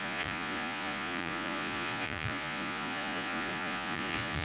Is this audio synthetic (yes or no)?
yes